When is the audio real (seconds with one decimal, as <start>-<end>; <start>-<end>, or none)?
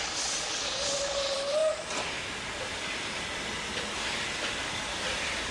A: none